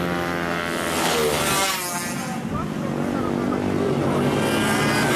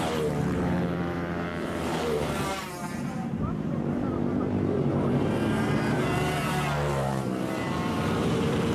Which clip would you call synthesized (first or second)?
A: second